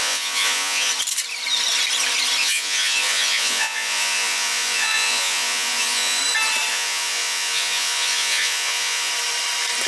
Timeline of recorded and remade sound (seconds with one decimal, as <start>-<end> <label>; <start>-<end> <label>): 0.0-0.9 remade; 0.9-2.4 recorded; 2.4-6.2 remade; 6.2-6.7 recorded; 6.7-9.1 remade; 9.1-9.9 recorded